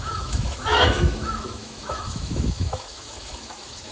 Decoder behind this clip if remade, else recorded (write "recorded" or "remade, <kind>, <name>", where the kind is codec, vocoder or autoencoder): remade, autoencoder, DAC-VAE